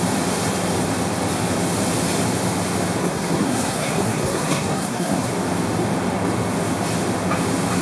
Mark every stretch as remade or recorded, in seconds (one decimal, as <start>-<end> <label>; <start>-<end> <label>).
0.0-3.0 recorded; 3.0-5.3 remade; 5.3-7.8 recorded